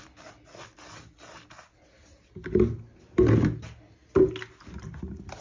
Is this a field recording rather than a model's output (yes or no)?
yes